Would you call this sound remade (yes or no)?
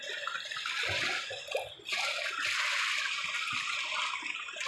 no